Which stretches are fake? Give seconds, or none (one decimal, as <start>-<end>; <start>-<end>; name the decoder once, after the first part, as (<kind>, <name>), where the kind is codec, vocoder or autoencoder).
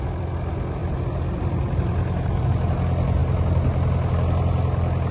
none